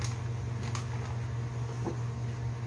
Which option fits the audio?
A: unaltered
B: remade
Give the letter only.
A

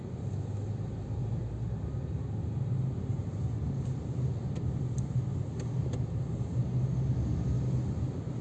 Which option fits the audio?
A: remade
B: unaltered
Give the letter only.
B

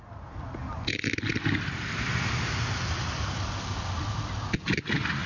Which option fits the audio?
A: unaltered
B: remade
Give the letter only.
A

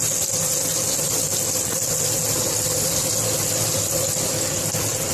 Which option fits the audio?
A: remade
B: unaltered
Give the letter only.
B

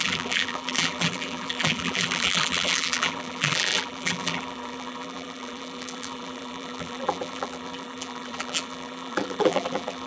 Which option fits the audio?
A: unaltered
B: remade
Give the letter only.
B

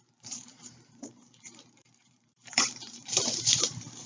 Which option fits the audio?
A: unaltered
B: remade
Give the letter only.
B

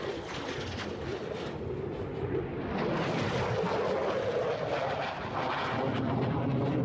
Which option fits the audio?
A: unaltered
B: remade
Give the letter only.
A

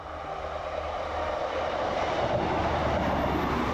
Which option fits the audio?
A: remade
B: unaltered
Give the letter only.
A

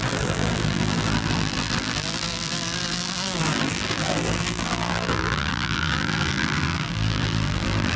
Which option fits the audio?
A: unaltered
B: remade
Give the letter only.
B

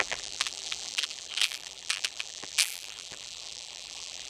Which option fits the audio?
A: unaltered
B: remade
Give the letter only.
B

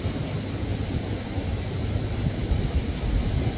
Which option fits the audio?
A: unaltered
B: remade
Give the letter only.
A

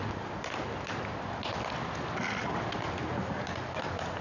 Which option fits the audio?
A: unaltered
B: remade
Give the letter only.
A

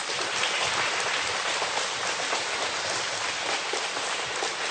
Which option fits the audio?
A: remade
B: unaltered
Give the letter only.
B